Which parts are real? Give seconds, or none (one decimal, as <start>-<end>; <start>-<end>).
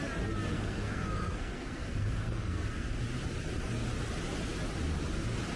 0.0-0.5; 3.0-5.6